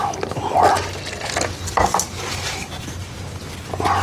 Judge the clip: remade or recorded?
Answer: recorded